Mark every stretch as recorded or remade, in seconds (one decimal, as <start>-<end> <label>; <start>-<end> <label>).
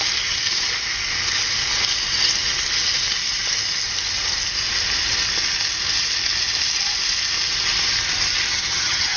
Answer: 0.0-8.5 recorded; 8.5-9.2 remade